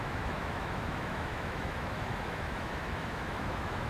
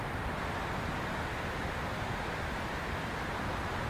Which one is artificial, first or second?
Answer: first